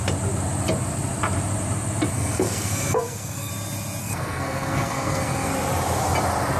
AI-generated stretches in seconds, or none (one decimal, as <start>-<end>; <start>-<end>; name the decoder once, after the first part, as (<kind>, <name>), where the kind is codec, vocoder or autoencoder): 2.1-3.5 (codec, SNAC); 4.0-5.5